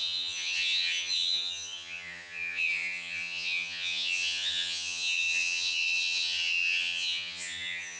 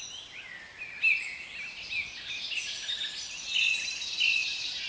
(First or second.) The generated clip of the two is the first